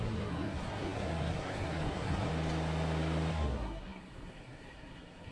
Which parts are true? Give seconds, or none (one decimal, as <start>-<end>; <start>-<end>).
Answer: 2.3-3.3